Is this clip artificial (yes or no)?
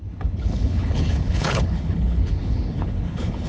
yes